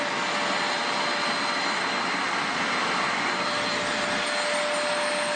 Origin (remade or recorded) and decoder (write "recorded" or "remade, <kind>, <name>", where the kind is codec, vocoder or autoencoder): recorded